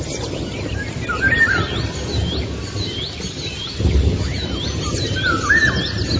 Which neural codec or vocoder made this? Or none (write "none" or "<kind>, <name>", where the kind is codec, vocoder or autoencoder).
none